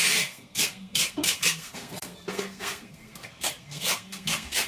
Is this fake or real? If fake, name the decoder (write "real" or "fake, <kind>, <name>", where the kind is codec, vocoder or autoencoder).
fake, codec, SNAC